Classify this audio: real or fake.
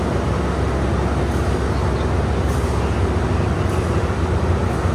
real